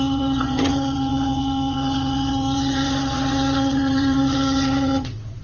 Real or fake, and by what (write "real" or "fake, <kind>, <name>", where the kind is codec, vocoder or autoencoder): fake, vocoder, WaveNeXt